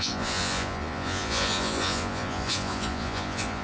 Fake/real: fake